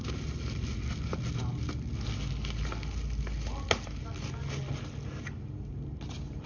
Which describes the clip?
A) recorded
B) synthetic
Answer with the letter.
A